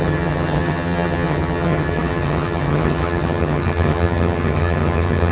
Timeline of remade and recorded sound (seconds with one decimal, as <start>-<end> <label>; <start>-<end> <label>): 0.0-5.3 remade